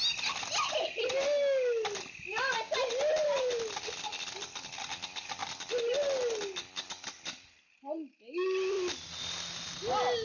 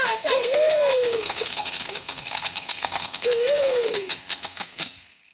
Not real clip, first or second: second